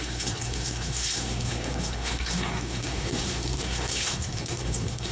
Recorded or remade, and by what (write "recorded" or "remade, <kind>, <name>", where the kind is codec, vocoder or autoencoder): remade, codec, SNAC